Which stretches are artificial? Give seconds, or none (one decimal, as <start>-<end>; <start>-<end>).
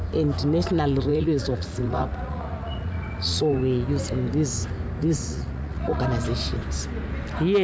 1.1-3.6; 5.0-6.0